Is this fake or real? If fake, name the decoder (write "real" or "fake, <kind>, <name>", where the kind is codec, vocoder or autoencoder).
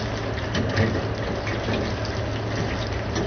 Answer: real